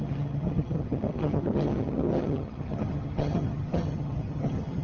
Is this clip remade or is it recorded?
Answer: remade